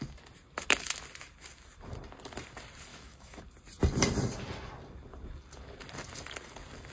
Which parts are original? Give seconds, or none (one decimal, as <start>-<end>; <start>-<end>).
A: 0.0-2.9; 3.4-6.9